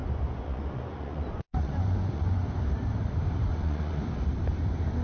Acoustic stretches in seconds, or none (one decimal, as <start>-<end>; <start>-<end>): 2.4-3.5; 4.1-5.0